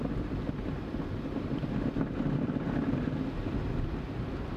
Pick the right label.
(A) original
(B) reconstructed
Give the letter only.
A